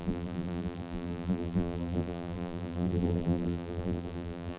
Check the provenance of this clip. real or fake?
fake